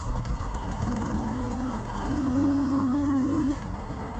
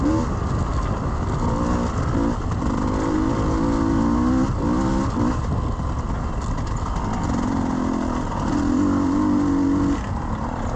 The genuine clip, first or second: second